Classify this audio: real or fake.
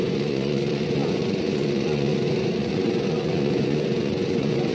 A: fake